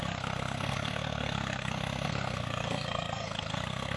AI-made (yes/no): yes